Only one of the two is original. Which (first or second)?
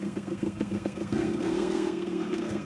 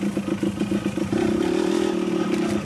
second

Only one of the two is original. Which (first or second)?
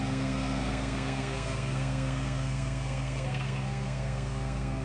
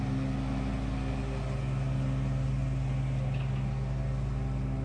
second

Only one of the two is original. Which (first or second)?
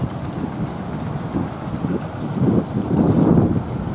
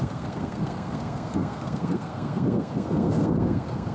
first